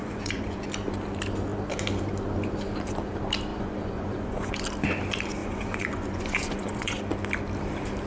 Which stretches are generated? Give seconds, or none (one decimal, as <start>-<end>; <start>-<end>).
0.0-0.6; 3.5-4.6; 5.4-7.0